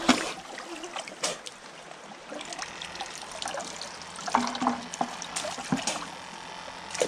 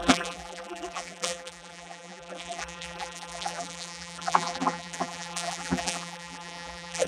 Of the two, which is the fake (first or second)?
second